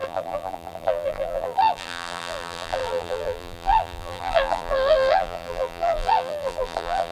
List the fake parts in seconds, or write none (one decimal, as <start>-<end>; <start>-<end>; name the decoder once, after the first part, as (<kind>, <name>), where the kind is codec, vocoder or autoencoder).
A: 0.0-7.1 (vocoder, BigVGAN v2)

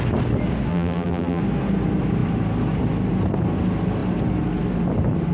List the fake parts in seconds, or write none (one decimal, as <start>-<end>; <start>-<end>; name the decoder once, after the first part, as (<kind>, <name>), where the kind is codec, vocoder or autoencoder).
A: 0.7-1.4 (vocoder, BigVGAN v2)

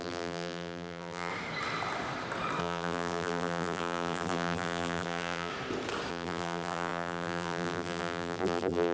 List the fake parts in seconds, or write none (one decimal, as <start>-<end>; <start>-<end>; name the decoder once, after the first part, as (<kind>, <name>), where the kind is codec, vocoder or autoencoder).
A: 0.0-1.3 (vocoder, BigVGAN v2); 2.6-5.5; 6.1-8.9

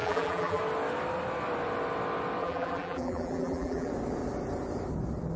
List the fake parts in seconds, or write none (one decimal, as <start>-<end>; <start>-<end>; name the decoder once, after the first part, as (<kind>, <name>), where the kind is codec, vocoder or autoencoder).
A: 0.0-0.6 (vocoder, BigVGAN v2); 2.4-3.9

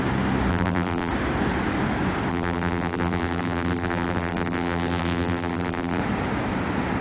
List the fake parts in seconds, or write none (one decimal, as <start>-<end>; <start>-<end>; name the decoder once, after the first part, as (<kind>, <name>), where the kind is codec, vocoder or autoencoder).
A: 0.5-1.1 (vocoder, BigVGAN v2); 2.3-6.0

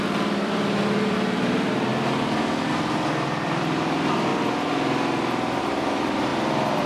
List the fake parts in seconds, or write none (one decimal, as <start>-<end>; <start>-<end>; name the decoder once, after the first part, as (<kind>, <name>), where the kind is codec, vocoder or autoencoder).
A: 0.0-1.9 (vocoder, BigVGAN v2); 2.7-4.3; 5.6-6.9

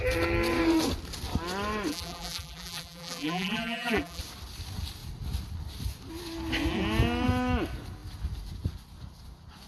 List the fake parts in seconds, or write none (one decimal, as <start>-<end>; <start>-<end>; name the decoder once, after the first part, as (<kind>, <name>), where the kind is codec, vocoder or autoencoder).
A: 1.9-4.2 (vocoder, BigVGAN v2)